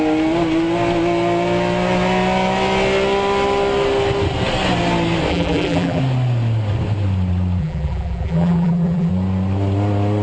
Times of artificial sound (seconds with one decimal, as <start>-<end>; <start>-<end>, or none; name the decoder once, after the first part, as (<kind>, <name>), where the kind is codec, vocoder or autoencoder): 5.3-6.0 (vocoder, BigVGAN v2); 7.6-9.1